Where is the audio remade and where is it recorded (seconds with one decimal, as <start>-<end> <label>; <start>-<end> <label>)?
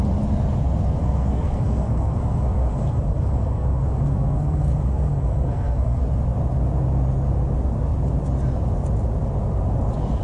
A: 0.0-1.0 recorded; 1.0-6.0 remade; 6.0-10.2 recorded